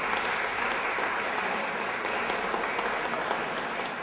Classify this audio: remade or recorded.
recorded